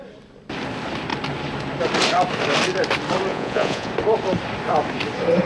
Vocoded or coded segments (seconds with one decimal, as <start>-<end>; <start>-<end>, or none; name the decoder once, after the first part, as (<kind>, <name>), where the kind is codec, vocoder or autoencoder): 3.3-3.9 (vocoder, Vocos)